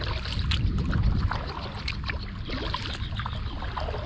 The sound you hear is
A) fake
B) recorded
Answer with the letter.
B